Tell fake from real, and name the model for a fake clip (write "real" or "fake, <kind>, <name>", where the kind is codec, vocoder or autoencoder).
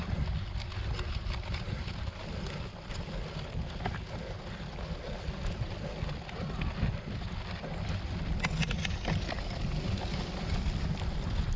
real